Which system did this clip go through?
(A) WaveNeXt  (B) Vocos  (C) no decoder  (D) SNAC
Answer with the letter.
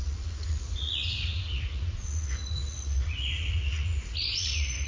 B